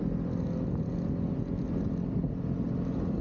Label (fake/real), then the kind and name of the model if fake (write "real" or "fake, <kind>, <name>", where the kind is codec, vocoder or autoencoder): real